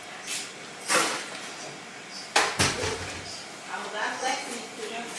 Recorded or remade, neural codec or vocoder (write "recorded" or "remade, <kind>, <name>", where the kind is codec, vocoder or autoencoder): recorded